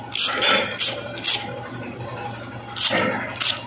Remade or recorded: recorded